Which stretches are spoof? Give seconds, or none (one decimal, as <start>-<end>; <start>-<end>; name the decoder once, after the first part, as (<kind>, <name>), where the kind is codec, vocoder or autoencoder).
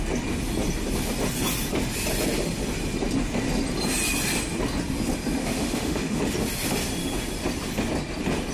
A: 5.4-6.2 (autoencoder, DAC-VAE)